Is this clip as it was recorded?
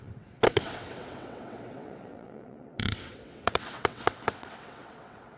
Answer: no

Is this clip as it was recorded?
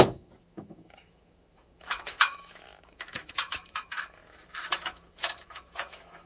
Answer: no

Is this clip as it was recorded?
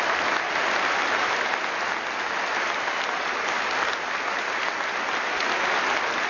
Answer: yes